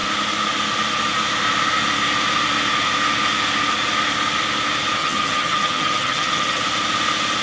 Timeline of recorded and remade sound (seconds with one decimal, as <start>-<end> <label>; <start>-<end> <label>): 0.0-5.0 recorded; 5.0-6.6 remade; 6.6-7.4 recorded